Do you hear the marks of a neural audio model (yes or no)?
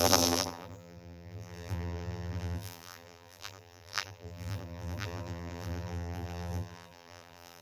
yes